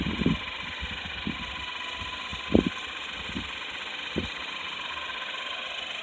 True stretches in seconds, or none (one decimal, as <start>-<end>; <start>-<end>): 0.0-6.0